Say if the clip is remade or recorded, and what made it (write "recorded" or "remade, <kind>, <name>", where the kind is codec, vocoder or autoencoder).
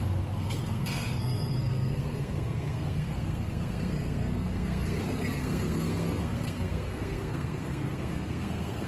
remade, codec, SNAC